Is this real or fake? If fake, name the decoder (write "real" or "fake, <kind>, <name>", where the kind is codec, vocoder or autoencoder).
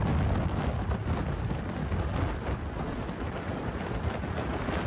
real